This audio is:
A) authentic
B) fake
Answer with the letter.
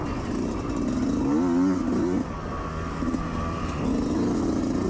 A